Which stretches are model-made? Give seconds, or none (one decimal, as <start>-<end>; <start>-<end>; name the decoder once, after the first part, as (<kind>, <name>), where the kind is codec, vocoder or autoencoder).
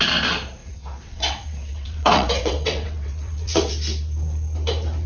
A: 0.6-3.7 (vocoder, WaveNeXt)